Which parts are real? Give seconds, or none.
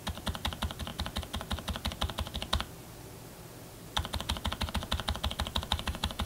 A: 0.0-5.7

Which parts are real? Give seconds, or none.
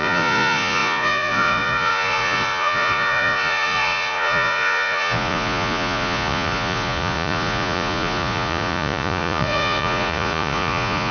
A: none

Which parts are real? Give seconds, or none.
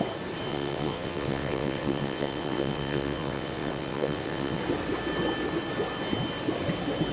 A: 0.0-0.5; 4.6-7.1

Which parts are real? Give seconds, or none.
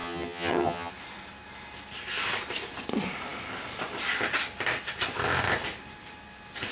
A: 0.9-6.7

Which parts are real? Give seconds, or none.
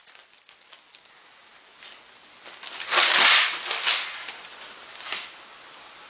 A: 0.0-6.1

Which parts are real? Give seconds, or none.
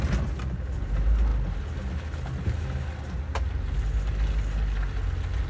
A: 0.0-5.5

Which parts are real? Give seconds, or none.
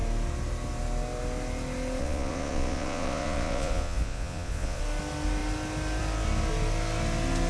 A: 0.0-2.0; 4.8-7.5